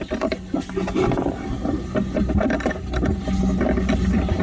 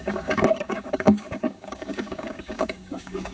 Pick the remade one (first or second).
second